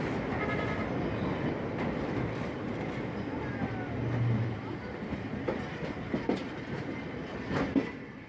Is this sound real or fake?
real